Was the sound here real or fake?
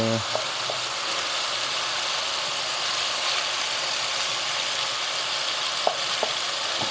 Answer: real